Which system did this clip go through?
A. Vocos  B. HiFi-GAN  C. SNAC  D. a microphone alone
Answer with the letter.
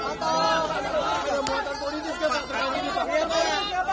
D